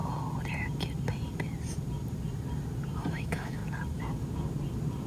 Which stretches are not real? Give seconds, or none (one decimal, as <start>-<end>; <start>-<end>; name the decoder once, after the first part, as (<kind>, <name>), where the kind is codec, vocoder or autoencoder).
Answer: 3.1-3.6 (autoencoder, DAC-VAE)